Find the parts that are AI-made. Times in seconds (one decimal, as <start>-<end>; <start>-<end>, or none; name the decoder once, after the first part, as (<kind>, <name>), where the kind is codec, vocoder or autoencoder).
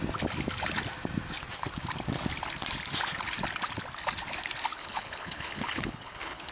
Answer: 4.8-6.5 (codec, HILCodec)